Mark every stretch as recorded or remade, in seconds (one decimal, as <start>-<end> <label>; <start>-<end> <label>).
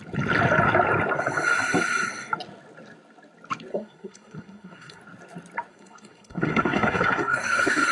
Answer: 0.0-3.7 recorded; 3.7-5.0 remade; 5.0-5.7 recorded; 5.7-7.9 remade